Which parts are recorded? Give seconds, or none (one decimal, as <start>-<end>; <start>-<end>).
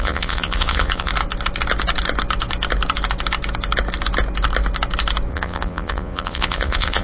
1.1-5.3